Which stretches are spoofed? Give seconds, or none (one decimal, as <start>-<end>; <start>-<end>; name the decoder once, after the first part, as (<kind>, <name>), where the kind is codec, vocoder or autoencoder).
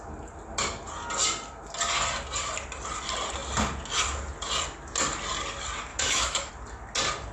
5.9-6.5 (autoencoder, DAC-VAE)